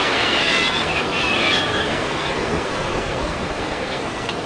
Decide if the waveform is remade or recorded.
remade